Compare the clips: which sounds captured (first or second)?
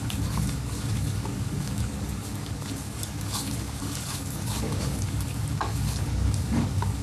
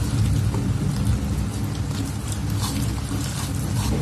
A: second